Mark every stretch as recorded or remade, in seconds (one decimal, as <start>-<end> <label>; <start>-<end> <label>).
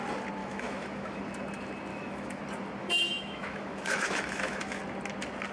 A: 0.0-0.4 recorded; 0.4-1.2 remade; 1.2-1.9 recorded; 1.9-2.4 remade; 2.4-2.8 recorded; 2.8-4.8 remade; 4.8-5.5 recorded